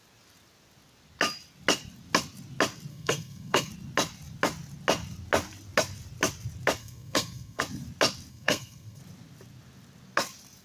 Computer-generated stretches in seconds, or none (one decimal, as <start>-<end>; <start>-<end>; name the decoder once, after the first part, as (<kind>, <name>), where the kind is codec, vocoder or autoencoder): 2.9-3.7 (codec, SNAC); 6.8-7.6; 8.3-9.0